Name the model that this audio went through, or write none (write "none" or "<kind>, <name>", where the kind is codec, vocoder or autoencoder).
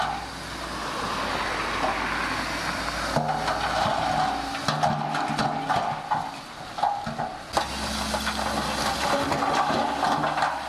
none